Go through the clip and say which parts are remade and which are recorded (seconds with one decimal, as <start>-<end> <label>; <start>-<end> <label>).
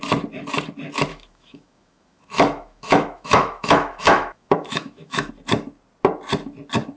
0.0-1.1 recorded; 1.1-5.3 remade; 5.3-7.0 recorded